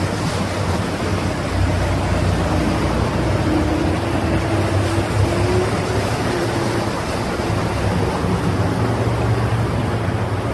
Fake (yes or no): no